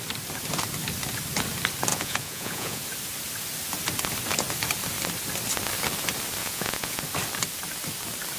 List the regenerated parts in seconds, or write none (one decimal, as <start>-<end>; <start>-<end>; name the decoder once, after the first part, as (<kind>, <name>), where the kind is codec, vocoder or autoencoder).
1.9-2.8 (vocoder, Vocos); 6.4-7.0